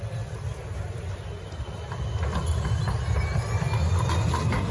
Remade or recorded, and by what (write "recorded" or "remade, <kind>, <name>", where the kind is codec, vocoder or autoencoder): recorded